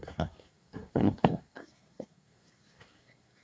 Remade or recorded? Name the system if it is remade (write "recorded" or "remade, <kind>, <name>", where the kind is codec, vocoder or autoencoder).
remade, codec, SNAC